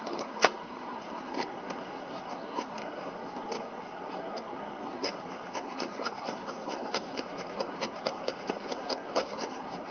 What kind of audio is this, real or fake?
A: fake